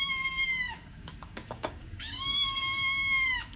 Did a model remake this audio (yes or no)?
yes